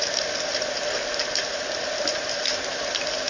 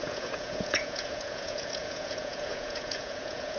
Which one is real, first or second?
first